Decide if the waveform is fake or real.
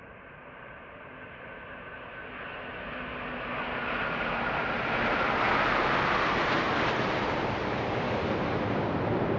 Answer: real